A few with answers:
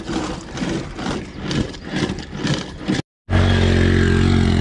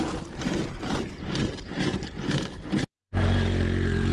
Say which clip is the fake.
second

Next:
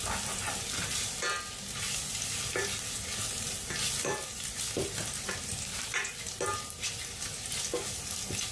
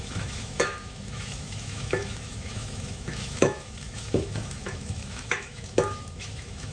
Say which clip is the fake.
second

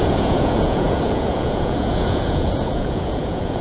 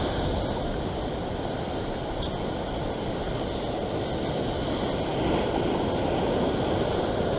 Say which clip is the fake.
first